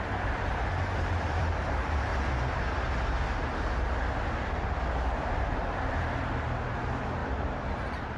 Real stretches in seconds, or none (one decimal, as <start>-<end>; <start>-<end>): 2.1-5.2